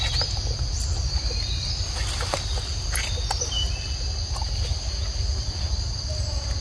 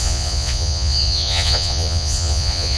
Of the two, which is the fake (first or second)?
second